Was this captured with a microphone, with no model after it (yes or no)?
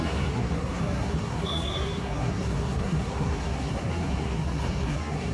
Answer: no